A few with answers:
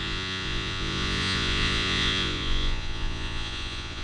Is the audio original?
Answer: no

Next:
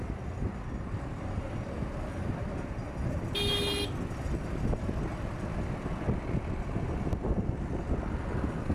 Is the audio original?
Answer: yes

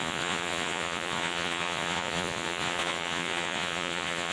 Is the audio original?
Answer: no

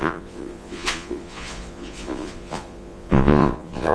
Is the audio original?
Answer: no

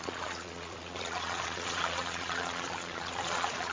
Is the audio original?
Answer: no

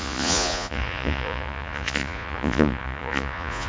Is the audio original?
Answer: no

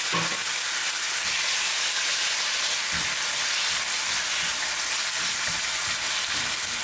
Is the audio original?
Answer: yes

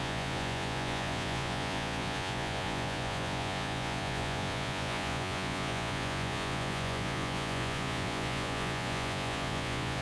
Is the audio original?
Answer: no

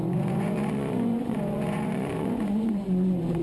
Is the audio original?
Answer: no